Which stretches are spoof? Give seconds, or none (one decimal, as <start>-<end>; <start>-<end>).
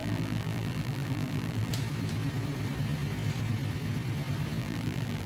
0.0-1.7; 4.6-5.3